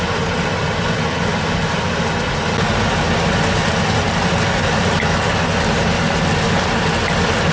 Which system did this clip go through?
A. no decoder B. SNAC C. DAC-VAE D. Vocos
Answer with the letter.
A